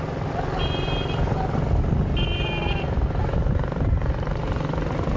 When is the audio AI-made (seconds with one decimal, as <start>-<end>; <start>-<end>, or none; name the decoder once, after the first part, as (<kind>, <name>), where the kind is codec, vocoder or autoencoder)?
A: 3.2-4.4 (vocoder, BigVGAN v2)